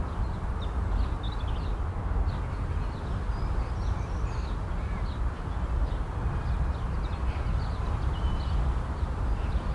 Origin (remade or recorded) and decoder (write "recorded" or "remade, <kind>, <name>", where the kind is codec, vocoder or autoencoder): recorded